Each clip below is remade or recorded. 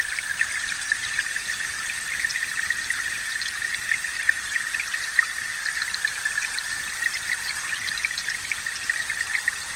recorded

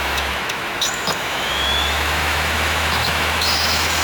remade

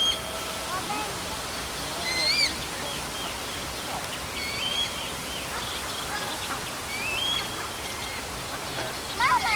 recorded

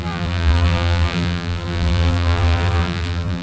remade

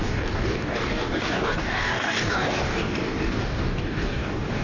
remade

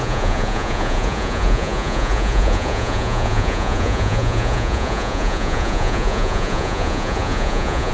remade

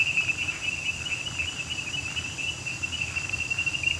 recorded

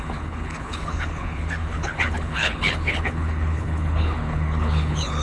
remade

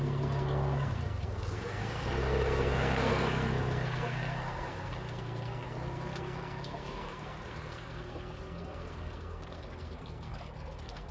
remade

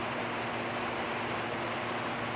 recorded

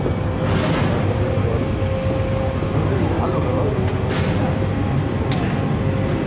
recorded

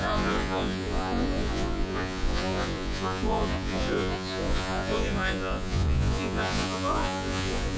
remade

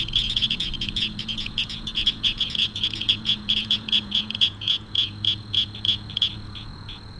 remade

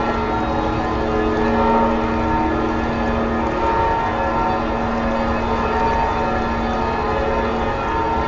recorded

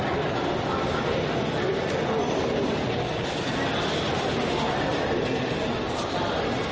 recorded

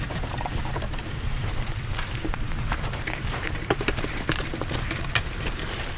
remade